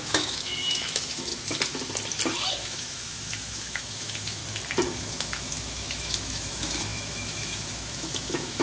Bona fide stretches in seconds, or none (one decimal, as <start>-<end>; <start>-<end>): 1.3-2.5; 4.4-5.0